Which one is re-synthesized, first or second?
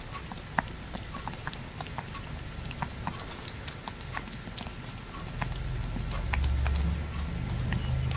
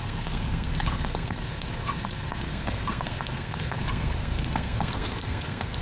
second